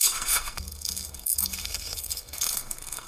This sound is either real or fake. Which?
fake